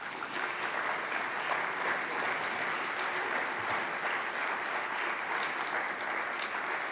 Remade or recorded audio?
recorded